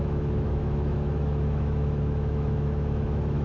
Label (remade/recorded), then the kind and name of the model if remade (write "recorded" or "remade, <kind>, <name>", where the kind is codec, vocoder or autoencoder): remade, autoencoder, DAC-VAE